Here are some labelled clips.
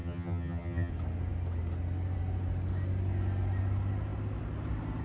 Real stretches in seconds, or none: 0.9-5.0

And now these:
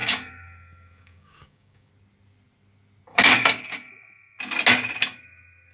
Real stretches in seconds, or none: 1.9-3.1; 3.9-5.7